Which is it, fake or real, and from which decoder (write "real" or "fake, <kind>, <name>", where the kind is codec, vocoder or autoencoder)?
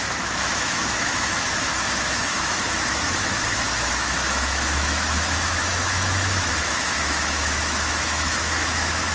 fake, autoencoder, DAC-VAE